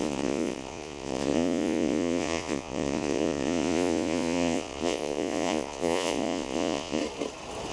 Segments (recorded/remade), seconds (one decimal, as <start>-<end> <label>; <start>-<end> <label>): 0.0-7.0 remade; 7.0-7.7 recorded